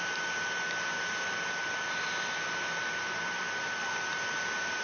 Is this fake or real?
real